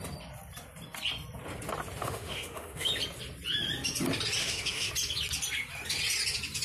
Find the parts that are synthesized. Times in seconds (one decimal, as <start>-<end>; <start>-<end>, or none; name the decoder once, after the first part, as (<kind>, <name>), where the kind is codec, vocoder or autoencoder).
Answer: 2.0-2.9 (autoencoder, DAC-VAE); 4.4-4.9